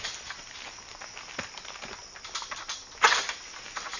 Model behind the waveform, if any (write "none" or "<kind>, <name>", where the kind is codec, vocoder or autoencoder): none